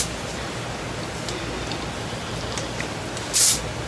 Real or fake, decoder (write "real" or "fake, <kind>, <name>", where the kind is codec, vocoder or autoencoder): real